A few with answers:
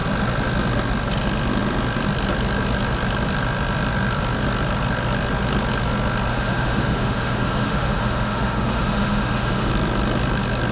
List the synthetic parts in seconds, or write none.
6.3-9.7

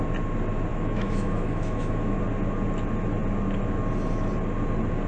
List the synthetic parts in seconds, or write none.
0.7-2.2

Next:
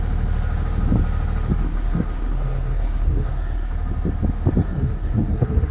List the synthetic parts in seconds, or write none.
1.6-3.7; 4.6-5.7